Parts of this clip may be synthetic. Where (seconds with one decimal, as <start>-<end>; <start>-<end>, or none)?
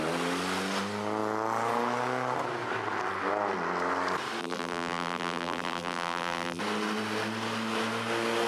4.4-6.6